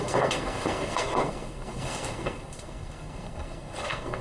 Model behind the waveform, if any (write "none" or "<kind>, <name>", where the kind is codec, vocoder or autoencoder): codec, SNAC